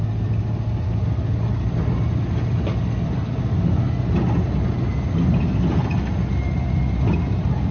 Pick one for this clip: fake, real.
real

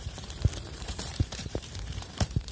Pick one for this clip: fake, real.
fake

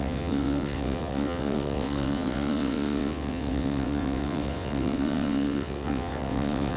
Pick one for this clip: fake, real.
fake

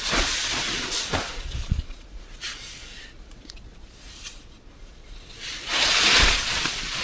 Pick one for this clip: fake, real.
fake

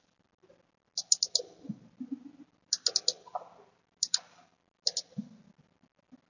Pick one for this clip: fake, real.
real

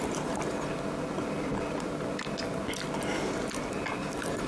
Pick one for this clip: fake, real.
real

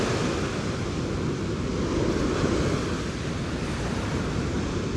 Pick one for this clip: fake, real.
real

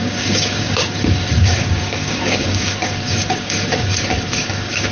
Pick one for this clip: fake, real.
fake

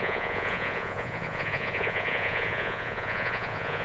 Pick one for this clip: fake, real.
fake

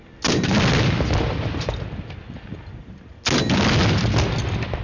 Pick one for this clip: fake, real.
real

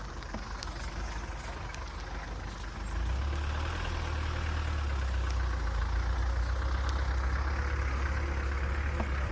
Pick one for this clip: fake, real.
real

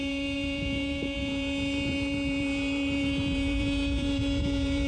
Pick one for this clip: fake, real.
fake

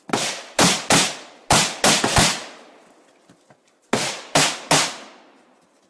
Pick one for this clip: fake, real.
real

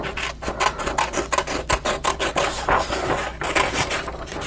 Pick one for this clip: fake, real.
real